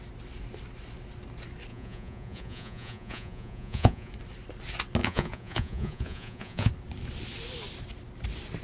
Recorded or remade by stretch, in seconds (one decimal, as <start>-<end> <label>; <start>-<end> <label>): 0.0-1.7 recorded; 1.7-4.1 remade; 4.1-5.0 recorded; 5.0-6.7 remade; 6.7-8.6 recorded